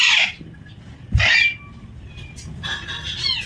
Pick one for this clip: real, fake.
real